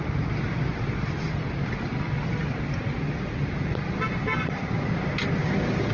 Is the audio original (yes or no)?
yes